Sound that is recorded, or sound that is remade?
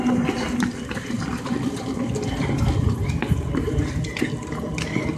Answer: recorded